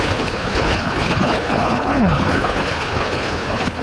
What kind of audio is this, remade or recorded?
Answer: remade